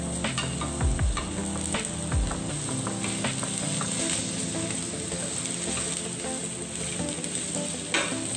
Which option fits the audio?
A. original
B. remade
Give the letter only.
A